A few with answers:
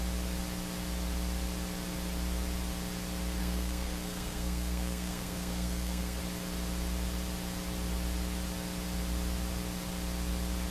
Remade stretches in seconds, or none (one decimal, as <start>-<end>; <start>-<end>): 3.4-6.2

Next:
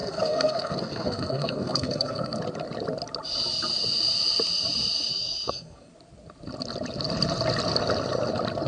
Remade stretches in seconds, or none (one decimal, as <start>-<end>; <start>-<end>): 0.0-2.4; 5.1-5.9

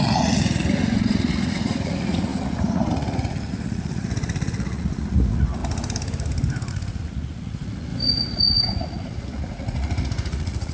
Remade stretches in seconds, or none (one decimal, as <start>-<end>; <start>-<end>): 0.0-5.6; 6.7-10.7